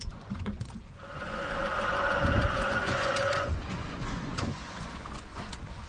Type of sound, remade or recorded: remade